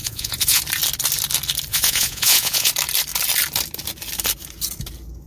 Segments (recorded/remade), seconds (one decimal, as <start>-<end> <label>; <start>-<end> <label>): 0.0-0.6 remade; 0.6-1.7 recorded; 1.7-2.7 remade; 2.7-5.3 recorded